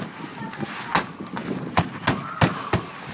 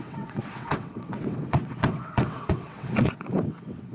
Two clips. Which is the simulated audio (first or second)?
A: second